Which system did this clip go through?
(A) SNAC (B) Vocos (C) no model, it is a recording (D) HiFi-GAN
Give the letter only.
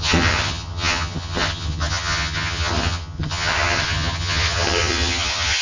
D